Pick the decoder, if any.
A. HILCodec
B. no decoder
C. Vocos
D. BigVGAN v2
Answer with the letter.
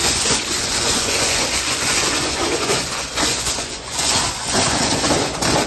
C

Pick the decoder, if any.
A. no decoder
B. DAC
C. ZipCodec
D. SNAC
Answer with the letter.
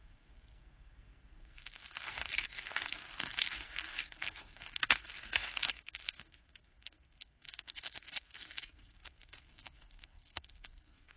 D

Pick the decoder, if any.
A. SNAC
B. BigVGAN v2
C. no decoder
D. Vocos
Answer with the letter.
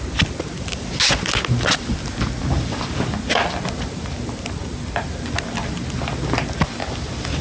C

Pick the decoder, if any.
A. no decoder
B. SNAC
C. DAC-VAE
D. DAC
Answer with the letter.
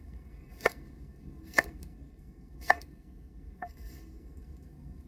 B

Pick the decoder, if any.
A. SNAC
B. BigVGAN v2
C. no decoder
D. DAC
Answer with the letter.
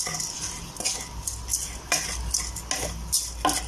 C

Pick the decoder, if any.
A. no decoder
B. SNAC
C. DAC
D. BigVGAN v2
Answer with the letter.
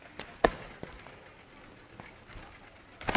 A